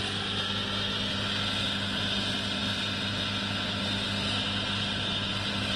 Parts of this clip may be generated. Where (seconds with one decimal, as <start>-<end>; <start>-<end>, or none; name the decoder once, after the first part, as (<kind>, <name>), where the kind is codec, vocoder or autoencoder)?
none